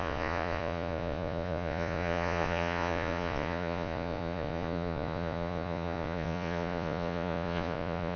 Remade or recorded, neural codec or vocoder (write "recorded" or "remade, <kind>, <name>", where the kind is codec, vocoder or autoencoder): remade, vocoder, Vocos